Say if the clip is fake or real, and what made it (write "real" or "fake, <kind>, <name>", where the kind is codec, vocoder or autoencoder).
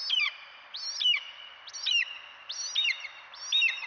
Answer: real